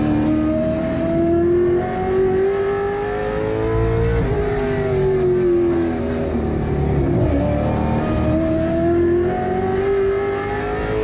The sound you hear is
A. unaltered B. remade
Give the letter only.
A